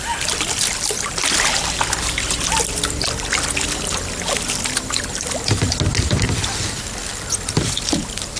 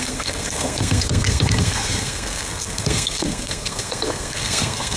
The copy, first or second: second